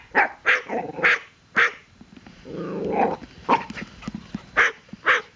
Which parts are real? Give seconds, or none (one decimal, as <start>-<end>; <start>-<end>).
0.0-5.4

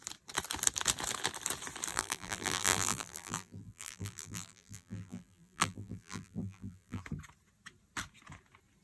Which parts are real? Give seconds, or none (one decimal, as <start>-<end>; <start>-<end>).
0.0-1.9; 7.0-8.8

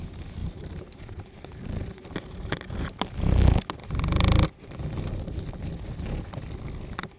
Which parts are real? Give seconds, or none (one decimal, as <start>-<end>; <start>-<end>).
0.0-0.4; 2.5-7.2

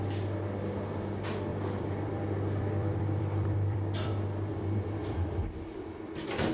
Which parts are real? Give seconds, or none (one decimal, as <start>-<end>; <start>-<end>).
0.0-1.5; 4.1-4.5

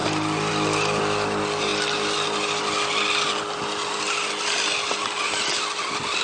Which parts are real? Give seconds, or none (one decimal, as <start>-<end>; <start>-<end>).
0.0-6.2

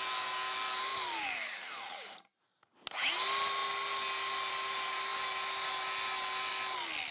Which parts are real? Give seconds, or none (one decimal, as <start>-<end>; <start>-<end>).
0.0-0.9; 2.6-7.1

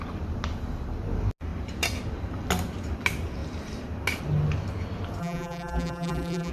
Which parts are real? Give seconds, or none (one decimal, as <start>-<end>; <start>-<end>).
0.0-5.2

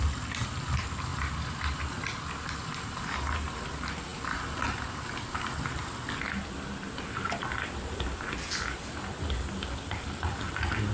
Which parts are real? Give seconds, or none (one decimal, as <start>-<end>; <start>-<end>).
0.0-1.1; 3.0-4.1; 6.2-10.9